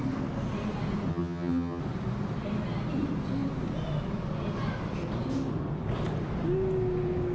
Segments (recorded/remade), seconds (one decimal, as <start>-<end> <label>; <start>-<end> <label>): 0.0-1.1 recorded; 1.1-1.8 remade; 1.8-7.3 recorded